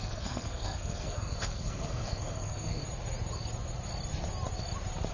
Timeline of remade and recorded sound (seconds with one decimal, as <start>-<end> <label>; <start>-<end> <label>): 0.0-2.8 remade; 2.8-5.1 recorded